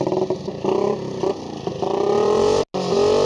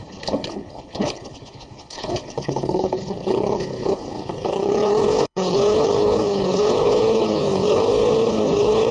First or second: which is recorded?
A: first